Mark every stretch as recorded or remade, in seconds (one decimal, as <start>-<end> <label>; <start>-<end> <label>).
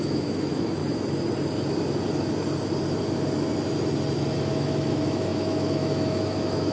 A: 0.0-0.8 remade; 0.8-4.5 recorded; 4.5-6.7 remade